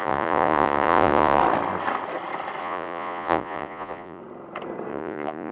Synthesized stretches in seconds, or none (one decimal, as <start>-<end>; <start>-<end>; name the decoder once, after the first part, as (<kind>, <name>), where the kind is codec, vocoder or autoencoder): 0.0-1.4 (vocoder, Vocos); 2.6-4.2; 4.9-5.5